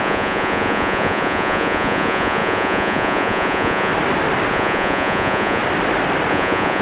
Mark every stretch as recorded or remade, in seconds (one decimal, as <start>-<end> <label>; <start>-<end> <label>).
0.0-3.9 remade; 3.9-4.5 recorded; 4.5-5.6 remade; 5.6-6.3 recorded; 6.3-6.8 remade